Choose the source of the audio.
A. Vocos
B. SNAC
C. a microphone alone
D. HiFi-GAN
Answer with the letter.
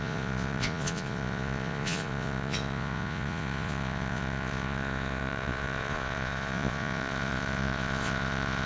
A